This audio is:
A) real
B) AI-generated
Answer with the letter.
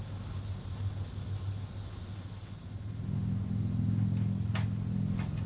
A